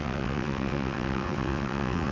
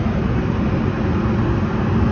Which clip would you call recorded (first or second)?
second